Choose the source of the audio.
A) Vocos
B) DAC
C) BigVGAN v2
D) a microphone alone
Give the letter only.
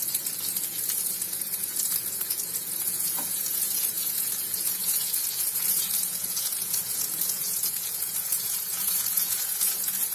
A